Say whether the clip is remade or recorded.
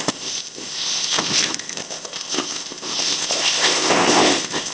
remade